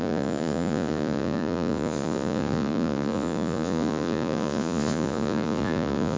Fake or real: fake